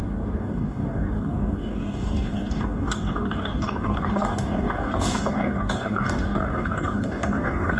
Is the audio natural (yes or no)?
no